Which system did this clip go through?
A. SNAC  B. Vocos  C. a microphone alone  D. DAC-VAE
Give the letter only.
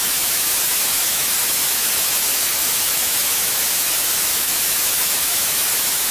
D